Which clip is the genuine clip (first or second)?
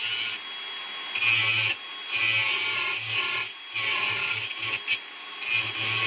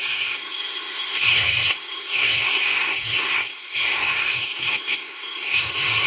first